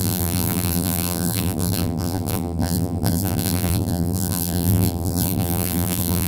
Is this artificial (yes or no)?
yes